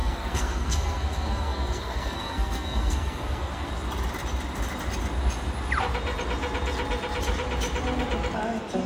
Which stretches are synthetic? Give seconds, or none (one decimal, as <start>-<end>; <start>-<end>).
0.0-3.7

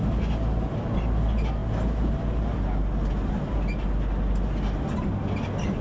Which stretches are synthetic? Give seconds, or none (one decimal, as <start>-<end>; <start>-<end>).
none

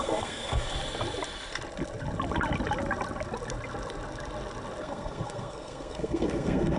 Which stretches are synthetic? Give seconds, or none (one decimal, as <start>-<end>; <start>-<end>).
0.0-0.7; 4.8-6.8

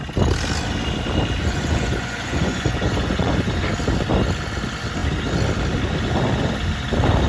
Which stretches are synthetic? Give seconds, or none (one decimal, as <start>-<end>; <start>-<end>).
1.4-3.3